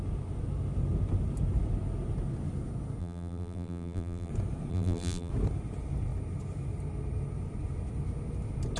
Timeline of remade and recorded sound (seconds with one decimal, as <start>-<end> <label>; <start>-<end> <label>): 0.0-3.0 recorded; 3.0-4.3 remade; 4.3-4.7 recorded; 4.7-5.3 remade; 5.3-8.8 recorded